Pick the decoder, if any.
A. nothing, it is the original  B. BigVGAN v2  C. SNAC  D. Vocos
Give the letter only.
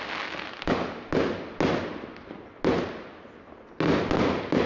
A